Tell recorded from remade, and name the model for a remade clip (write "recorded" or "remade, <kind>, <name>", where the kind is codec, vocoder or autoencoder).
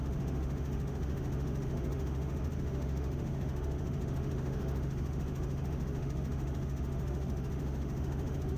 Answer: remade, autoencoder, DAC-VAE